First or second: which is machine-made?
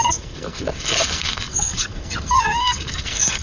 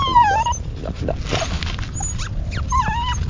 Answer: first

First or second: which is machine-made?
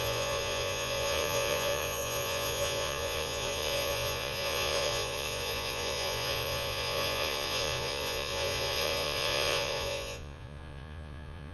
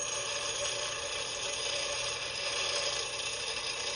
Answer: first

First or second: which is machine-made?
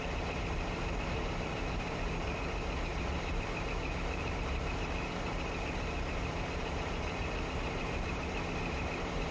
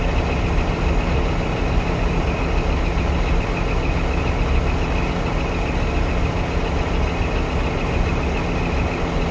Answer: first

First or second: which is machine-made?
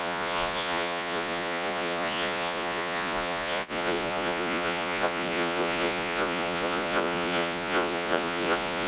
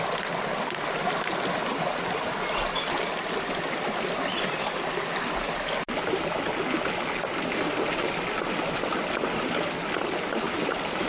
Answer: first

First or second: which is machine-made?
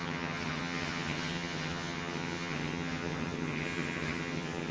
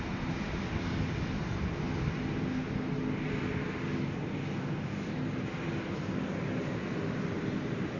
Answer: first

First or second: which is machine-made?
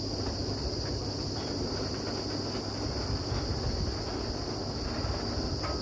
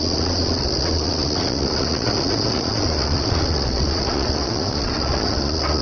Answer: second